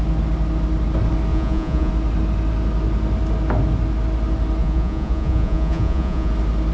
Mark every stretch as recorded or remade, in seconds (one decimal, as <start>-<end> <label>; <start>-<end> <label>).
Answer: 0.0-1.3 recorded; 1.3-1.9 remade; 1.9-4.6 recorded; 4.6-6.3 remade; 6.3-6.7 recorded